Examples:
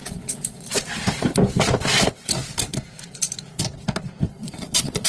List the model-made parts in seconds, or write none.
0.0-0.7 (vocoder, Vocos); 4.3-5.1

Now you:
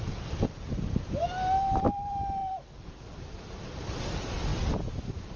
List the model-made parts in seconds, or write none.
none

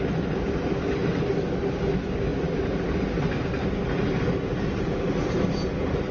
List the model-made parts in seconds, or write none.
none

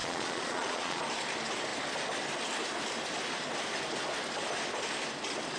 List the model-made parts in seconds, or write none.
0.0-1.0 (vocoder, Vocos)

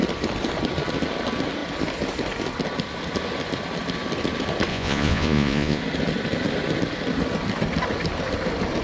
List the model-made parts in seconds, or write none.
4.7-5.8 (vocoder, Vocos)

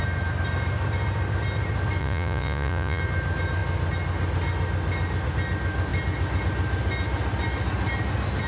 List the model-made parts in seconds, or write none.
2.0-3.0 (vocoder, Vocos)